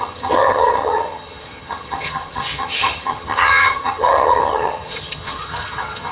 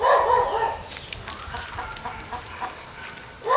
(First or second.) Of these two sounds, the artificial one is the first